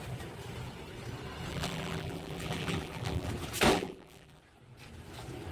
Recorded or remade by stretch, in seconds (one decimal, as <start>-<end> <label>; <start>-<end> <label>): 0.0-1.5 recorded; 1.5-3.3 remade; 3.3-3.7 recorded; 3.7-4.4 remade; 4.4-5.5 recorded